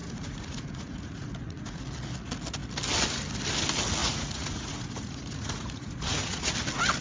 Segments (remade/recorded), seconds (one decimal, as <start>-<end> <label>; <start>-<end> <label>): 0.0-1.8 remade; 1.8-4.0 recorded; 4.0-6.5 remade; 6.5-7.0 recorded